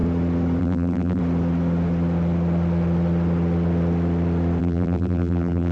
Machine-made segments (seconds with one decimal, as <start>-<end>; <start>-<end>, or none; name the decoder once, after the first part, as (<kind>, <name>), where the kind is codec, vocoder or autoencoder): 0.6-1.2 (vocoder, BigVGAN v2); 4.6-5.7